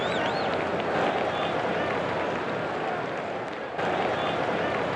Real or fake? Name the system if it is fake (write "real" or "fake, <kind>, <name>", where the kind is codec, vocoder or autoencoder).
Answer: real